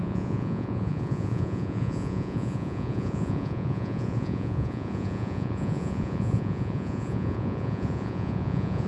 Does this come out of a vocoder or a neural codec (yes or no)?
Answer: yes